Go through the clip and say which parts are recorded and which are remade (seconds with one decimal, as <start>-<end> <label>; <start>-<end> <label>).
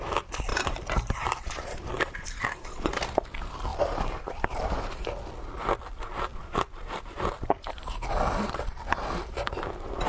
0.0-0.5 recorded; 0.5-2.4 remade; 2.4-3.7 recorded; 3.7-4.5 remade; 4.5-6.3 recorded; 6.3-7.9 remade; 7.9-10.1 recorded